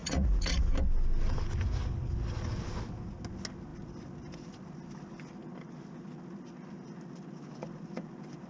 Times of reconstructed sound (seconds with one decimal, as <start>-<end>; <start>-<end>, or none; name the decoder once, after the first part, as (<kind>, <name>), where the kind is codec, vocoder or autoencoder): 0.0-0.7 (vocoder, Vocos)